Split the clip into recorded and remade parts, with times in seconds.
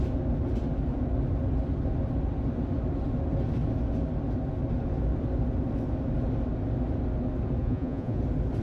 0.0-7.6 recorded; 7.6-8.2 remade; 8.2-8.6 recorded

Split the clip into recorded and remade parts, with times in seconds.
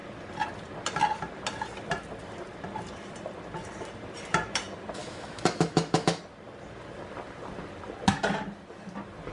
0.0-5.0 recorded; 5.0-6.2 remade; 6.2-9.3 recorded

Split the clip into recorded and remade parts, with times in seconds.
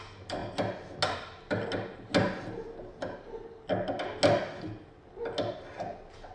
0.0-6.3 recorded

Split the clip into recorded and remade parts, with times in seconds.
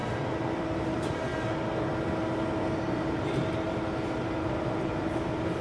0.0-0.9 recorded; 0.9-1.3 remade; 1.3-4.1 recorded; 4.1-5.6 remade